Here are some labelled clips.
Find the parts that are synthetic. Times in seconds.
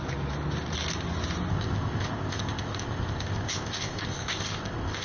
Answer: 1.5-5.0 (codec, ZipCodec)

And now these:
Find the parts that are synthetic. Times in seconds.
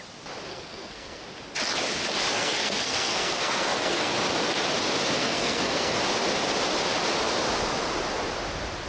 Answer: 0.5-1.2 (codec, SNAC); 2.3-4.1; 5.2-6.0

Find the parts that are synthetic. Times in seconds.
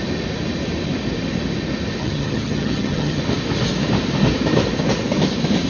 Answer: 2.0-3.2 (vocoder, HiFi-GAN)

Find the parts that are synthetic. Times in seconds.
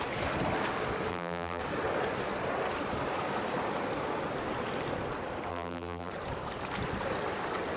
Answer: 1.1-1.6 (vocoder, BigVGAN v2); 5.5-6.1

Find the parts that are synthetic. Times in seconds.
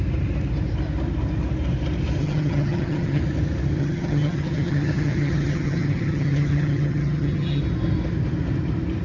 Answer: 2.2-3.2 (vocoder, HiFi-GAN); 3.8-7.6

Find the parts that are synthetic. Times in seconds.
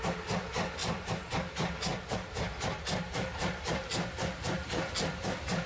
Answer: 0.8-1.3 (vocoder, BigVGAN v2); 1.9-5.3